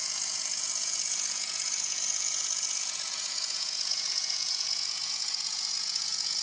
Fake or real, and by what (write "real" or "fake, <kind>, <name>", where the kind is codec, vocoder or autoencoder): fake, vocoder, Vocos